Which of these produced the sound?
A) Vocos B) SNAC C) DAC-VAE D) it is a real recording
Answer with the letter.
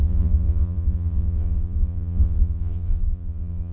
A